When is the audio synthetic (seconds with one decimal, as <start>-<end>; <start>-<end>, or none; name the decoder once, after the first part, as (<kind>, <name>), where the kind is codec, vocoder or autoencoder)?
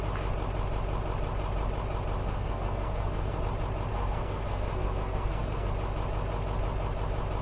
2.2-3.4 (codec, SNAC); 3.9-5.7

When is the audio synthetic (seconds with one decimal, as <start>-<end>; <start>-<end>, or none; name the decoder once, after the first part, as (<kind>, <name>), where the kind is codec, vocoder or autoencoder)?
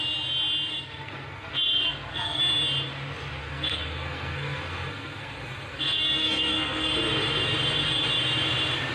0.7-2.4 (codec, SNAC); 3.4-6.9